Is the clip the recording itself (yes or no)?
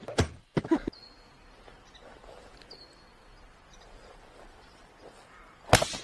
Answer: yes